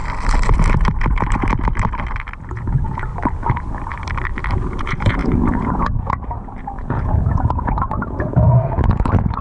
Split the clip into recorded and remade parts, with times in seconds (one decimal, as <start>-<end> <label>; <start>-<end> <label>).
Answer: 0.0-2.5 recorded; 2.5-3.1 remade; 3.1-4.8 recorded; 4.8-9.4 remade